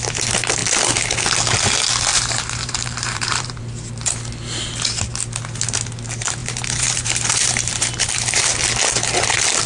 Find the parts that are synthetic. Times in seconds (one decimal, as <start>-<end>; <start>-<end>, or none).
2.1-3.6; 6.4-8.5